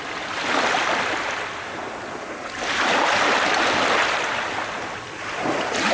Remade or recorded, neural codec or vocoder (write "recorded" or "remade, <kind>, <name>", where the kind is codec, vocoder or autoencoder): recorded